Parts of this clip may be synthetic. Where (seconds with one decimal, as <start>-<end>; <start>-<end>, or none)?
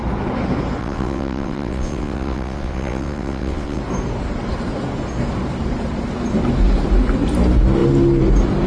0.8-3.8